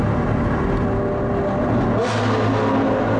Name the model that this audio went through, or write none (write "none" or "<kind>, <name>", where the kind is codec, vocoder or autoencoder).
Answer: none